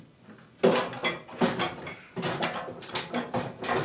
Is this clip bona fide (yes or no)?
yes